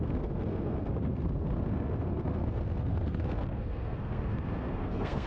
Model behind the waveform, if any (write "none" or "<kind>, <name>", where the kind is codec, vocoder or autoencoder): codec, SNAC